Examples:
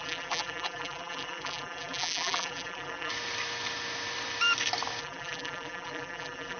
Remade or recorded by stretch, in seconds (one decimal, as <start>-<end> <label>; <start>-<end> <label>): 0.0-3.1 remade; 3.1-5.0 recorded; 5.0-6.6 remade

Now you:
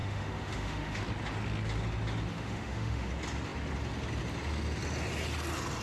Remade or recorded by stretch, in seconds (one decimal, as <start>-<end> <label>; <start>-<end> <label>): 0.0-1.0 remade; 1.0-2.3 recorded; 2.3-3.1 remade; 3.1-5.8 recorded

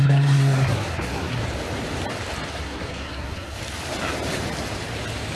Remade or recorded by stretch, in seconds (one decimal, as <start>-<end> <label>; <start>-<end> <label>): 0.0-1.4 remade; 1.4-2.5 recorded; 2.5-3.6 remade; 3.6-5.4 recorded

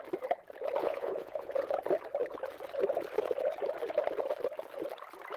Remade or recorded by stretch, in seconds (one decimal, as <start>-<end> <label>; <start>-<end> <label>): 0.0-0.8 recorded; 0.8-1.5 remade; 1.5-5.4 recorded

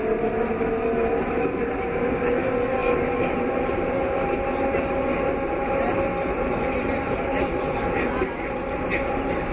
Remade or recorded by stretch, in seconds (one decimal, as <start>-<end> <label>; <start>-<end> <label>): 0.0-9.5 recorded